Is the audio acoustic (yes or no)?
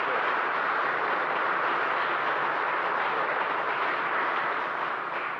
yes